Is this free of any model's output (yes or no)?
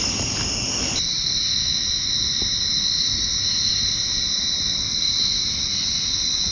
yes